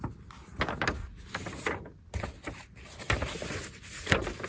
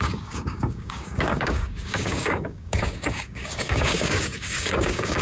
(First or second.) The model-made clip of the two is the second